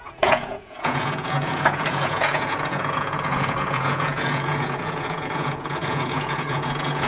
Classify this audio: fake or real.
fake